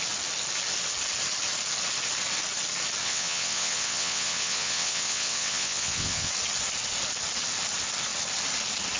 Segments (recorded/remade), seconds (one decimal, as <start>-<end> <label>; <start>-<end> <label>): 0.0-3.0 recorded; 3.0-6.3 remade; 6.3-9.0 recorded